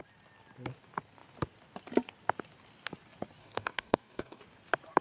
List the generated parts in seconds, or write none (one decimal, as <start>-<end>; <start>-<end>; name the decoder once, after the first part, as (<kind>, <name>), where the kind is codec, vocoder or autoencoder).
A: 3.4-4.4 (codec, DAC)